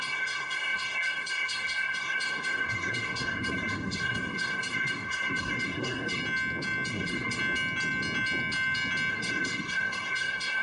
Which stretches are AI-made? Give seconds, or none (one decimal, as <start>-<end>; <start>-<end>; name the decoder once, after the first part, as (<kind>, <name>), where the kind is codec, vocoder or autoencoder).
0.0-6.2 (codec, SNAC); 6.9-7.4; 9.1-10.6

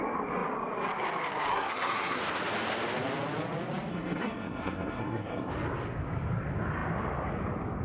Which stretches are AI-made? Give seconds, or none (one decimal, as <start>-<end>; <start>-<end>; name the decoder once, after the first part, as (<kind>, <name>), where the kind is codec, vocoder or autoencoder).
1.5-2.2 (codec, SNAC); 3.9-5.5

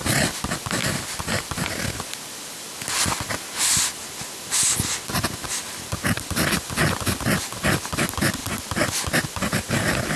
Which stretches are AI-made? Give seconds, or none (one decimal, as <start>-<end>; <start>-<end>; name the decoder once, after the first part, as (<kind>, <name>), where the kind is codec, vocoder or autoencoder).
none

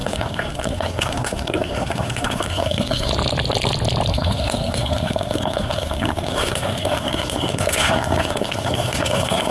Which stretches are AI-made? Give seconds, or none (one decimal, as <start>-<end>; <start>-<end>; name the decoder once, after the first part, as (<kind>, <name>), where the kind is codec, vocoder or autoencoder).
0.0-3.1 (codec, SNAC); 4.1-9.5

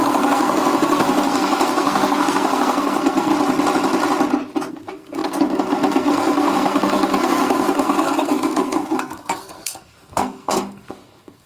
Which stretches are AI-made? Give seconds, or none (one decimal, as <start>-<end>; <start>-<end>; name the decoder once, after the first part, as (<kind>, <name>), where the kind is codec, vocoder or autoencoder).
0.0-3.3 (codec, SNAC); 4.7-11.5